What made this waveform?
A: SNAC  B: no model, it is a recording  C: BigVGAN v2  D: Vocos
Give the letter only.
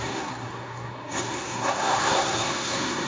A